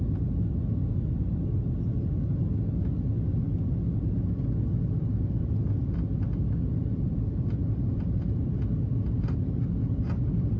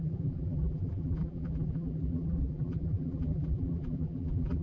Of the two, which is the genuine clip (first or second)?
first